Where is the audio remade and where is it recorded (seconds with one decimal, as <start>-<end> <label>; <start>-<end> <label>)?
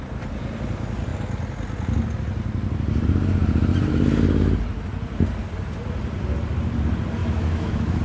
0.0-7.2 recorded; 7.2-8.0 remade